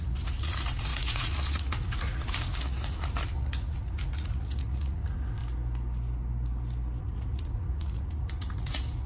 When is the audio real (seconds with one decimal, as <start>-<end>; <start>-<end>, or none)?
5.4-7.0